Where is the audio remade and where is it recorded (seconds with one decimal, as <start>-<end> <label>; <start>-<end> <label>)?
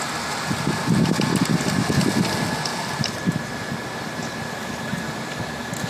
0.0-5.9 recorded